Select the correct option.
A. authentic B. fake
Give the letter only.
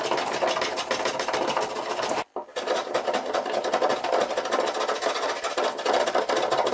A